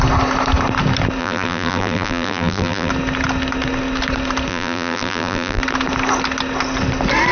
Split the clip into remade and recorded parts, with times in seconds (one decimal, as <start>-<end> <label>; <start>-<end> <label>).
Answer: 0.0-1.2 recorded; 1.2-2.9 remade; 2.9-4.5 recorded; 4.5-5.6 remade; 5.6-7.3 recorded